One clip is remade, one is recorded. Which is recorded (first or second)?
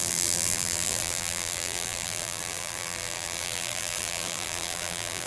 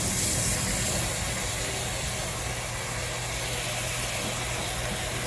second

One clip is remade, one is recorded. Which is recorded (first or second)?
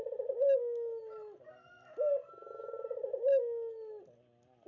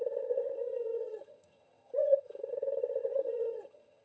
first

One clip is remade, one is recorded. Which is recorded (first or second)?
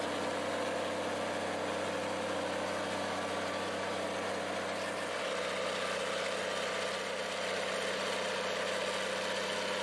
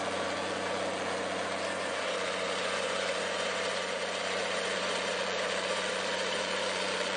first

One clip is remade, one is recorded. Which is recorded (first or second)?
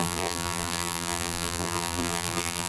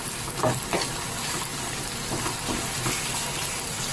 second